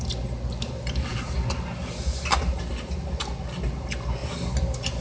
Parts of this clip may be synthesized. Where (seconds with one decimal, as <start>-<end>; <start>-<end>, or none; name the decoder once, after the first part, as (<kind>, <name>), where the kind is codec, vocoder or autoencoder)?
none